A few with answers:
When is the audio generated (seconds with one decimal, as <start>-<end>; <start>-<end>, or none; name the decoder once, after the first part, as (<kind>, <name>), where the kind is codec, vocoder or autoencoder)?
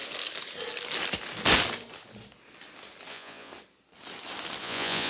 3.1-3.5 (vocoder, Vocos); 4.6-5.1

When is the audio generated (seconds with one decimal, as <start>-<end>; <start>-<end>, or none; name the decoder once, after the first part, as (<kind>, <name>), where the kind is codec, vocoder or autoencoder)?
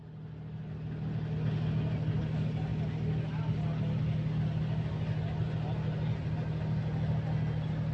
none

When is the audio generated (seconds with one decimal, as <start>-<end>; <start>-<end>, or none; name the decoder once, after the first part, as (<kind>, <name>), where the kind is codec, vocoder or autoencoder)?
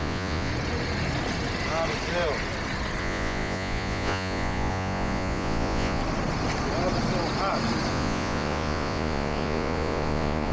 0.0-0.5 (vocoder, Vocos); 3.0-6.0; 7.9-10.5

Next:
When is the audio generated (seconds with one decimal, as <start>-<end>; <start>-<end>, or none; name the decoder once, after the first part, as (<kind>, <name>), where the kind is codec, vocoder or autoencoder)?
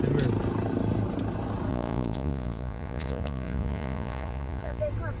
1.7-4.8 (vocoder, Vocos)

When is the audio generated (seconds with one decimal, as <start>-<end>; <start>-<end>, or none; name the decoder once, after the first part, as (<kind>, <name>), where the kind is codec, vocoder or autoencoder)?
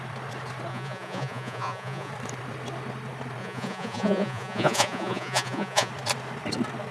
0.7-2.1 (vocoder, Vocos); 3.4-5.9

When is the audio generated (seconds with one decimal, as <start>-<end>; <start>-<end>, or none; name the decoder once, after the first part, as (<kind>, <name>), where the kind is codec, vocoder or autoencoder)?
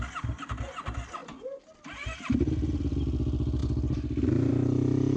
none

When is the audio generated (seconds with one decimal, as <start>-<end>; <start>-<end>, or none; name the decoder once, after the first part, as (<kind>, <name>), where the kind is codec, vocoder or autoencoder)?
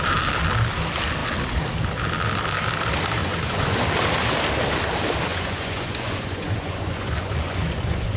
3.2-3.8 (vocoder, Vocos); 5.3-8.2